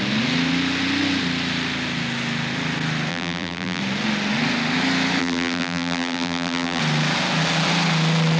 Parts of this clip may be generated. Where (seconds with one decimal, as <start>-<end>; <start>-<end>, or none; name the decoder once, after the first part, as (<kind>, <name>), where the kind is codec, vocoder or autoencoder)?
3.1-3.8 (vocoder, BigVGAN v2); 5.2-6.8